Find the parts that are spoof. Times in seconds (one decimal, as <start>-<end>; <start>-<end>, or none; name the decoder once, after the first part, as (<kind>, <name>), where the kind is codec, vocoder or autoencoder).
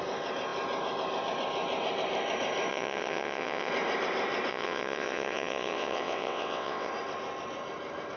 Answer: 2.7-3.7 (vocoder, WaveNeXt); 4.5-6.9